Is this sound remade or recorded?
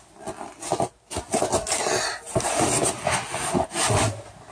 recorded